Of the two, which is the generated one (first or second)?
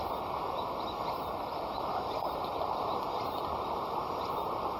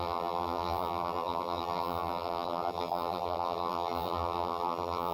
second